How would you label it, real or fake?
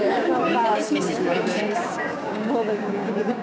fake